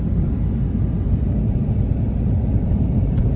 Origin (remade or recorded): remade